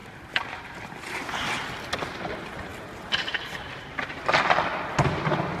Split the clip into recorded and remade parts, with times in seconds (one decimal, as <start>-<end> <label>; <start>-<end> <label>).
0.0-5.6 recorded